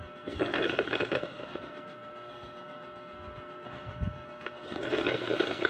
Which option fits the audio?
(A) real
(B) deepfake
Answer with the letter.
B